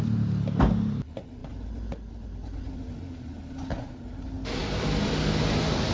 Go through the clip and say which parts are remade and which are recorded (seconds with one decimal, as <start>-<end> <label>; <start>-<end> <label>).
0.0-5.9 recorded